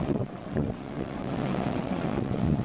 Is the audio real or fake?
fake